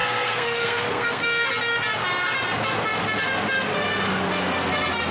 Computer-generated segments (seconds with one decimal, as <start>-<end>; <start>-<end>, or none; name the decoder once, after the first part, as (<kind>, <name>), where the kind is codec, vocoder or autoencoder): 0.0-1.5 (codec, SNAC)